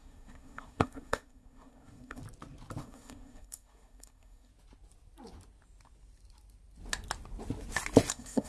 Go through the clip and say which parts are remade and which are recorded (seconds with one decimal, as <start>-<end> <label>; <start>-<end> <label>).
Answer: 0.0-2.2 remade; 2.2-2.8 recorded; 2.8-4.5 remade; 4.5-8.1 recorded; 8.1-8.5 remade